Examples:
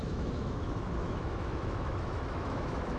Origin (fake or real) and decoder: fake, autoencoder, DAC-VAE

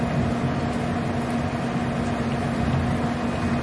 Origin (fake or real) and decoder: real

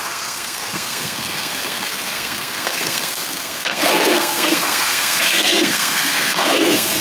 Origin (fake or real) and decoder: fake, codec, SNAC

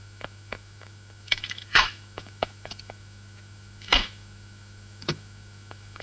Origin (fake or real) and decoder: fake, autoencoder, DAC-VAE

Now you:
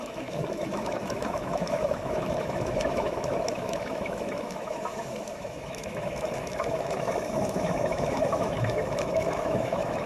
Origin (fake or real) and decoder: fake, autoencoder, DAC-VAE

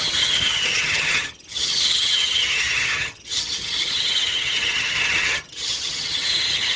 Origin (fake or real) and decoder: fake, vocoder, HiFi-GAN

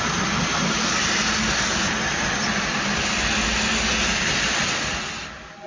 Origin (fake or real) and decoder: real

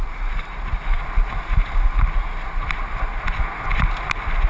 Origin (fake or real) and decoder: real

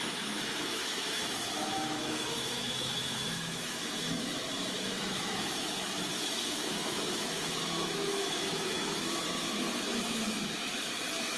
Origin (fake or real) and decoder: fake, autoencoder, DAC-VAE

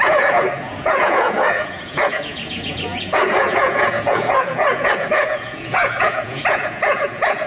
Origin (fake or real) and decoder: fake, vocoder, Vocos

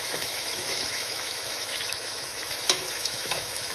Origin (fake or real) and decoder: fake, autoencoder, DAC-VAE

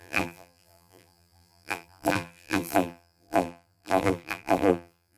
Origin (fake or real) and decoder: fake, vocoder, BigVGAN v2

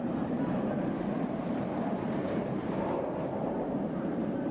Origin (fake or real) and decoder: fake, vocoder, BigVGAN v2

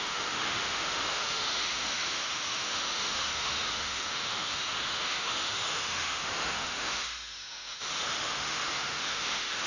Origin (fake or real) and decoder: fake, autoencoder, DAC-VAE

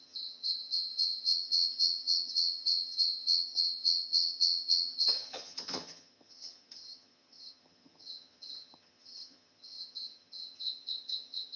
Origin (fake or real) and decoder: fake, vocoder, HiFi-GAN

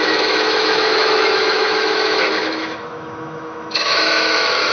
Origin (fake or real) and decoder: fake, autoencoder, DAC-VAE